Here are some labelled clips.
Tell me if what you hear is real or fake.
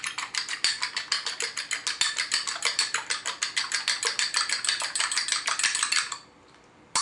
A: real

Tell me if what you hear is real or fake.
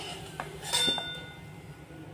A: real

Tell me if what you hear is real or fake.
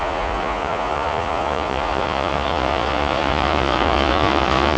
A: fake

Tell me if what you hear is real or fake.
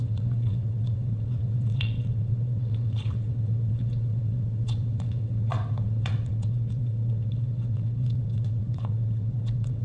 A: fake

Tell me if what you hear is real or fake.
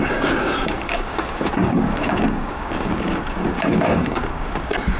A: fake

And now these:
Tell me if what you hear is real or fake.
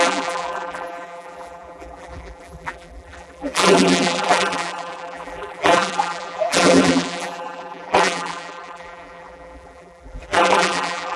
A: fake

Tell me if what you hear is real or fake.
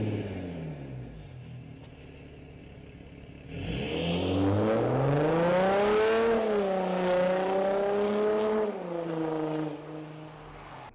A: real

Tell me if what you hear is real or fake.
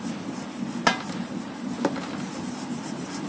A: real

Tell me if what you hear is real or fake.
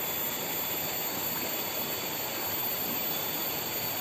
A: real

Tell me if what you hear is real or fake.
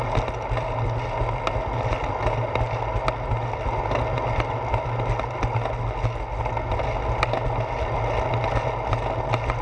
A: real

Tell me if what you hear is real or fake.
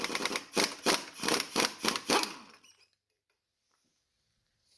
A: real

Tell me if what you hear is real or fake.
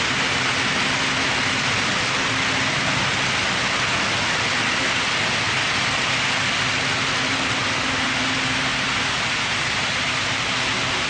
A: real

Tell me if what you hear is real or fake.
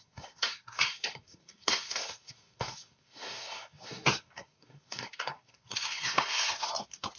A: fake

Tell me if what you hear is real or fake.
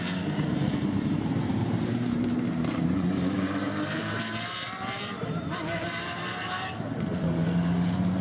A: fake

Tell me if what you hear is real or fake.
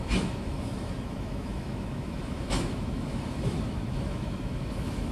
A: fake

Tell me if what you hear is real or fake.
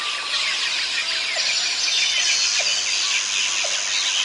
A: real